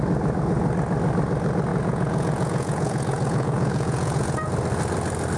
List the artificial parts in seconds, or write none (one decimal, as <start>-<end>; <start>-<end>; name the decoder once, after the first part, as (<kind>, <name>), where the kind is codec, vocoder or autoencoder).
1.7-4.5 (vocoder, Vocos)